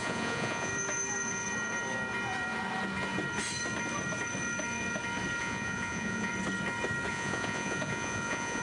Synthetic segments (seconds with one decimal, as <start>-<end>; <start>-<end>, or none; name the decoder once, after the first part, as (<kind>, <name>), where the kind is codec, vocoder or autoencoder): 0.0-0.7 (vocoder, Vocos); 5.4-6.3; 7.1-8.6